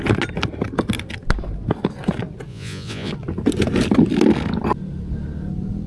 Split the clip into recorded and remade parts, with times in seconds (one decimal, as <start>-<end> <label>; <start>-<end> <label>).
0.0-2.5 recorded; 2.5-3.1 remade; 3.1-5.9 recorded